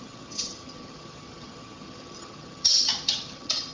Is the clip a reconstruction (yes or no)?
yes